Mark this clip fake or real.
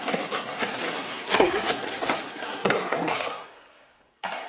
fake